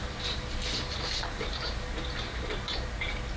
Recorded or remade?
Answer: remade